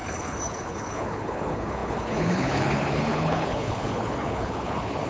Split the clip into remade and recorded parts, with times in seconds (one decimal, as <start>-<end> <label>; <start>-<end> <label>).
0.0-5.1 remade